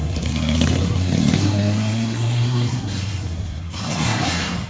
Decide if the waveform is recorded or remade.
remade